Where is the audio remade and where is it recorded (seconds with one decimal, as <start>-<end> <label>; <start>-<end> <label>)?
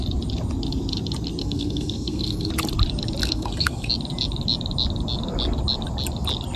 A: 0.0-1.4 recorded; 1.4-2.5 remade; 2.5-3.2 recorded; 3.2-3.9 remade; 3.9-6.6 recorded